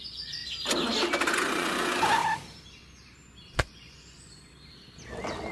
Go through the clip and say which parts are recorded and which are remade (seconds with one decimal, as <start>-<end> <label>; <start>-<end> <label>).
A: 0.0-0.4 remade; 0.4-1.3 recorded; 1.3-2.2 remade; 2.2-3.5 recorded; 3.5-4.5 remade; 4.5-5.5 recorded